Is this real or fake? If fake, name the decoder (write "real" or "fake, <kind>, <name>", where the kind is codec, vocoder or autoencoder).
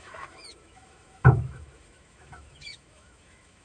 fake, autoencoder, DAC-VAE